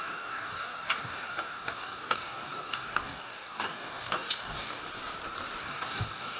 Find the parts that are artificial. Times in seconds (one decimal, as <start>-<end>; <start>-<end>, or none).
0.0-4.8; 5.6-6.4